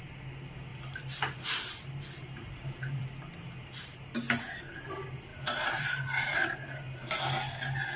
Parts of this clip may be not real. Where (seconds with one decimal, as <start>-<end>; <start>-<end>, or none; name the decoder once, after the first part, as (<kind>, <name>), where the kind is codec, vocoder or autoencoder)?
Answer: 0.7-3.0 (vocoder, BigVGAN v2); 5.3-7.1